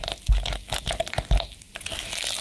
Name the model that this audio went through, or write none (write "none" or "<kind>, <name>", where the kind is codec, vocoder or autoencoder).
none